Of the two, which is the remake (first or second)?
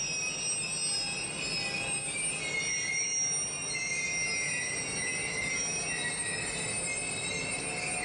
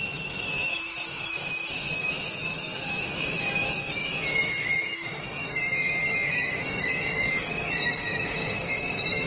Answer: second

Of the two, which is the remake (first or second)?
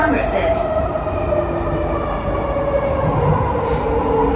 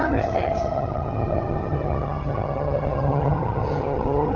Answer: second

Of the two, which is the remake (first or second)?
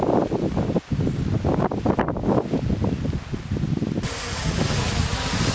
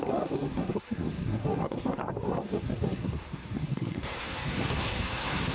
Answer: second